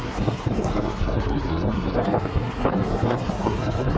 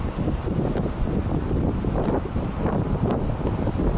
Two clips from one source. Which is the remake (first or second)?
first